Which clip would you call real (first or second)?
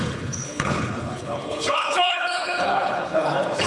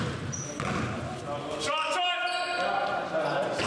second